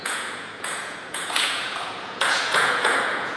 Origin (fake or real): fake